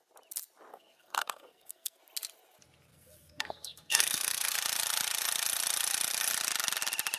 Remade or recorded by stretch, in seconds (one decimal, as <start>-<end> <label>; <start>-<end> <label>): 0.0-0.7 recorded; 0.7-2.0 remade; 2.0-2.9 recorded; 2.9-4.6 remade; 4.6-7.2 recorded